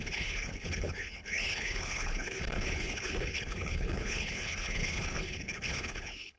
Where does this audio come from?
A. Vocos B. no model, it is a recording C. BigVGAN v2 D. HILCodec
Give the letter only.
D